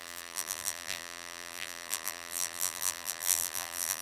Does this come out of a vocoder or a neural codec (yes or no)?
yes